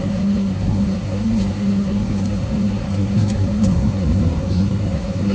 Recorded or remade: remade